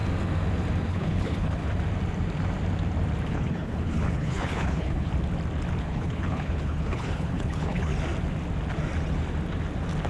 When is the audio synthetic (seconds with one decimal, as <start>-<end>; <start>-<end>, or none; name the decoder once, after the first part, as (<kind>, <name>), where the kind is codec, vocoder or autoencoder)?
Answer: 0.9-1.6 (codec, HILCodec); 3.3-5.1; 5.8-7.9